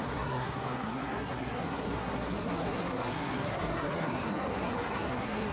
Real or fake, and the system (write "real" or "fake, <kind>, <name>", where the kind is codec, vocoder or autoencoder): fake, codec, SNAC